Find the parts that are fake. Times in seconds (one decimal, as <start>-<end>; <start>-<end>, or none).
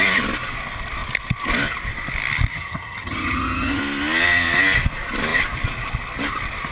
2.5-3.8